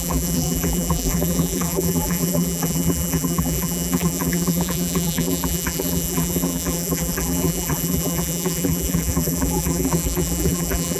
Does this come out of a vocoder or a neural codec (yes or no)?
yes